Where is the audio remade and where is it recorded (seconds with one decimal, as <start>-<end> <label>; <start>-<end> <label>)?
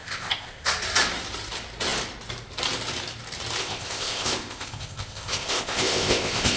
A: 0.0-0.7 remade; 0.7-3.6 recorded; 3.6-6.6 remade